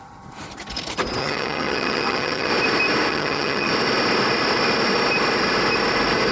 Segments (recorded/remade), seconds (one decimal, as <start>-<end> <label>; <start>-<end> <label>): 0.0-1.2 recorded; 1.2-2.5 remade; 2.5-3.1 recorded; 3.1-3.7 remade; 3.7-6.3 recorded